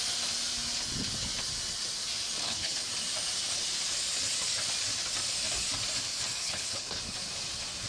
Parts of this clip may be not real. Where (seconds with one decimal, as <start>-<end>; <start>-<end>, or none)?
2.4-2.9; 6.4-7.0